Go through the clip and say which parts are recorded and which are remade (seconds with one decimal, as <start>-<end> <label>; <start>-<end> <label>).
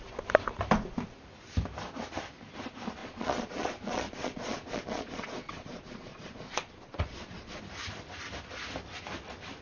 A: 0.0-3.0 recorded; 3.0-7.6 remade; 7.6-9.6 recorded